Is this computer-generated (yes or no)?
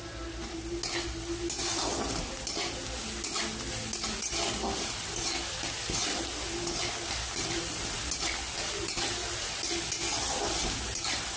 no